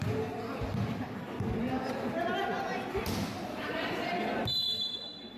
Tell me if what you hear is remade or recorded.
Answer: recorded